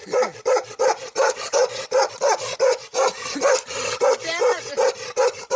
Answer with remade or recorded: remade